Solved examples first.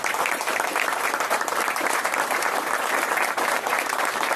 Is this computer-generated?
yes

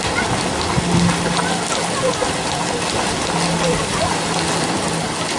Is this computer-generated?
no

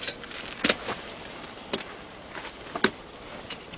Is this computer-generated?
no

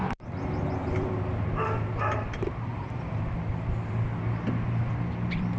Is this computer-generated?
yes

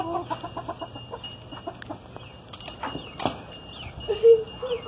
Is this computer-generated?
no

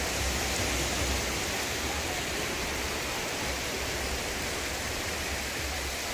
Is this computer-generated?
yes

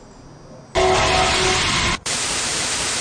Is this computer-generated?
no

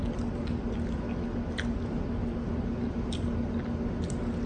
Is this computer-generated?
no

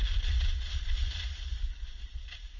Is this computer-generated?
no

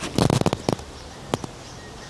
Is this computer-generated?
no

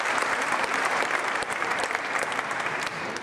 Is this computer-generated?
yes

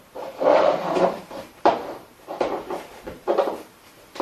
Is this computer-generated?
yes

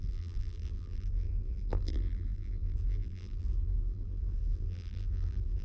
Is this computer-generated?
yes